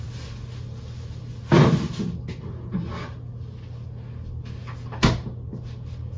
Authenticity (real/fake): real